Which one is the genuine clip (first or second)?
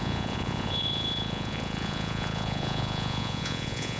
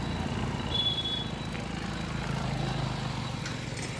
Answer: second